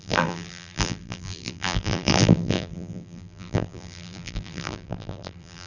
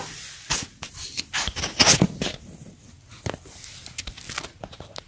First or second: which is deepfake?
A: first